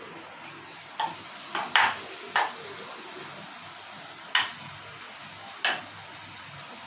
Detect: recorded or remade recorded